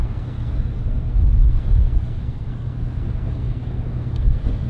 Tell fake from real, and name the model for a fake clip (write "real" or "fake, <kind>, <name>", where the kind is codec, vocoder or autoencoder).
fake, codec, SNAC